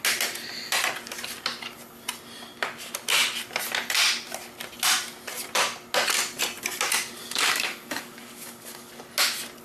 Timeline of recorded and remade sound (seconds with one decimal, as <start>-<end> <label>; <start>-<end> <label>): 0.0-7.2 recorded; 7.2-8.9 remade; 8.9-9.6 recorded